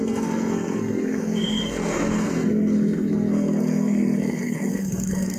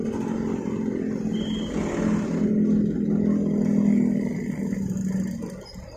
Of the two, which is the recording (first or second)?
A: second